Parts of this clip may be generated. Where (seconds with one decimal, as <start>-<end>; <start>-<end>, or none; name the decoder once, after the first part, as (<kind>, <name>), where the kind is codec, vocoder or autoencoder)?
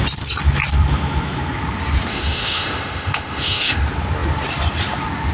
2.1-3.8 (autoencoder, DAC-VAE)